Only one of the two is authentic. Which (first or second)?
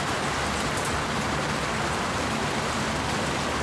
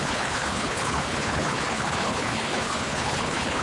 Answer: first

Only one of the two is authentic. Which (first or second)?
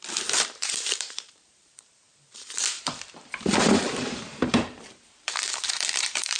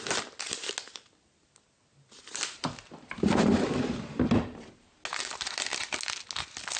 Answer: second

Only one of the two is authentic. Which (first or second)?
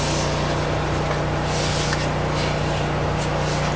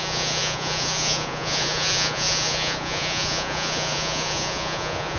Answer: first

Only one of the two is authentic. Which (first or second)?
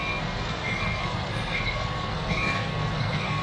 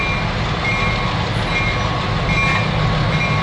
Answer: second